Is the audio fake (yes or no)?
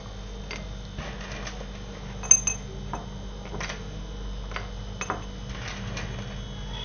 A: no